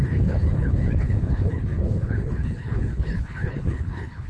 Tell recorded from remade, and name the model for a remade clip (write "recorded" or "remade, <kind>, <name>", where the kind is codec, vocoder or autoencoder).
remade, codec, HILCodec